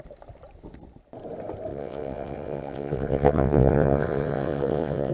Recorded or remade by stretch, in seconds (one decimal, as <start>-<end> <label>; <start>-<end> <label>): 0.0-1.7 recorded; 1.7-5.1 remade

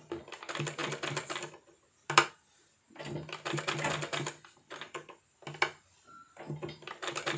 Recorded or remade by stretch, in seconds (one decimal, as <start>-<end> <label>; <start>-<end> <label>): 0.0-7.4 recorded

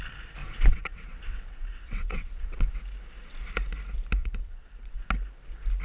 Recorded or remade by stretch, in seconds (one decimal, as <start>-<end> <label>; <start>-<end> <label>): 0.0-0.4 recorded; 0.4-2.7 remade; 2.7-4.2 recorded; 4.2-5.0 remade; 5.0-5.8 recorded

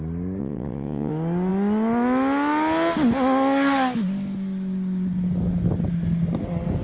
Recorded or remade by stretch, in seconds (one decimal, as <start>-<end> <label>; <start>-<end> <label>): 0.0-0.4 recorded; 0.4-1.1 remade; 1.1-6.8 recorded

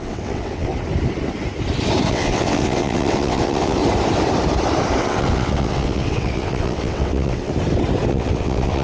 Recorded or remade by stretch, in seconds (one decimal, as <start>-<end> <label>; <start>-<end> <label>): 0.0-0.7 remade; 0.7-2.1 recorded; 2.1-3.8 remade; 3.8-5.0 recorded; 5.0-7.5 remade; 7.5-8.1 recorded; 8.1-8.8 remade

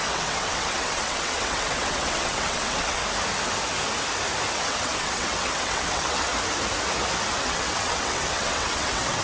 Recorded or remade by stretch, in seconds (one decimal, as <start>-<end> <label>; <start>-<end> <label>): 0.0-3.0 remade; 3.0-4.5 recorded; 4.5-6.3 remade; 6.3-7.4 recorded; 7.4-9.2 remade

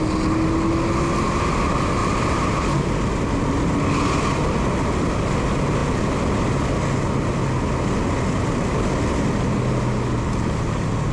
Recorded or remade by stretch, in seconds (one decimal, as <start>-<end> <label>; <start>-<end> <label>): 0.0-11.1 recorded